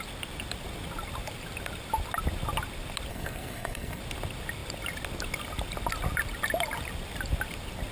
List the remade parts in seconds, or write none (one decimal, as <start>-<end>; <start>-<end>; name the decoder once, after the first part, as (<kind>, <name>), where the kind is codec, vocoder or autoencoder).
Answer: 3.1-4.0 (codec, SNAC)